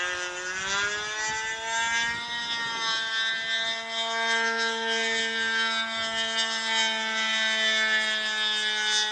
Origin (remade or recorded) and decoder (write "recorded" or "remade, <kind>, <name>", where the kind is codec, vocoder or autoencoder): recorded